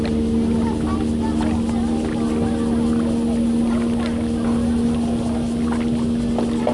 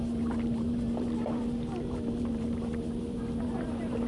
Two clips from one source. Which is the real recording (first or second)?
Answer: first